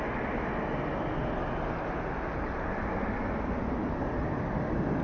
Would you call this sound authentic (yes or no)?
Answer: yes